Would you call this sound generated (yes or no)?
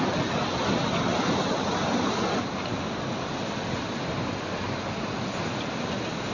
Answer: no